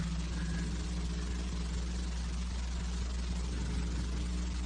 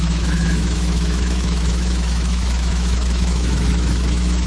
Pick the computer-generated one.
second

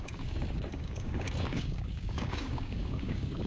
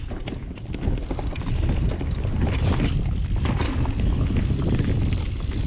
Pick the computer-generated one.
first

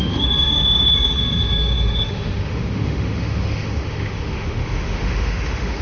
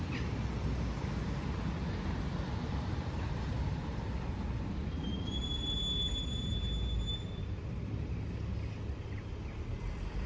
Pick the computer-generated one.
first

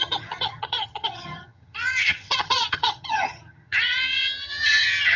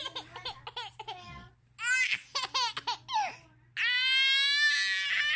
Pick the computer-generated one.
first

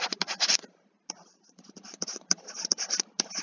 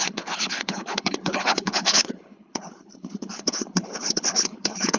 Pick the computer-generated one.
second